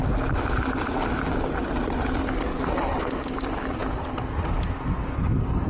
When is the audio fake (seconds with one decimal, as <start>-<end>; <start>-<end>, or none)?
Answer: 0.0-0.7